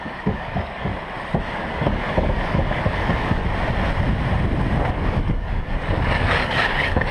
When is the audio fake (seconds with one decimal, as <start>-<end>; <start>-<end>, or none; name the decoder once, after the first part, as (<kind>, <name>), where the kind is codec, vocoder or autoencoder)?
0.0-0.9 (codec, DAC); 1.4-3.4; 4.9-7.1